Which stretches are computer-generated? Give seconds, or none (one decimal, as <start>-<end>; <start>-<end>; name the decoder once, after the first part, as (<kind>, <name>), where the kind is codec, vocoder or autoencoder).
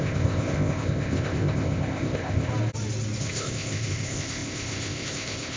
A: 0.0-2.5 (codec, ZipCodec); 3.2-5.6